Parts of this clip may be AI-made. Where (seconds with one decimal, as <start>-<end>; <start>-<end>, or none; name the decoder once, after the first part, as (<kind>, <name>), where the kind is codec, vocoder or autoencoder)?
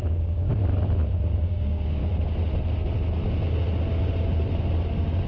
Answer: 0.0-0.6 (codec, DAC); 1.3-2.0